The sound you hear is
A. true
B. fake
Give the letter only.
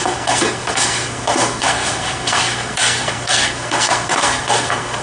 B